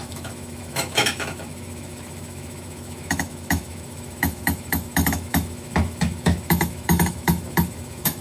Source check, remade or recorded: remade